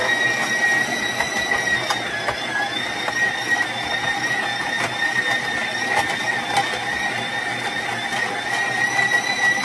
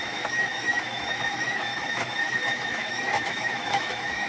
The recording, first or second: first